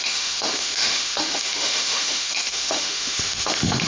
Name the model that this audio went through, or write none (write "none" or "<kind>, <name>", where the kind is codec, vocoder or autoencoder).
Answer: autoencoder, DAC-VAE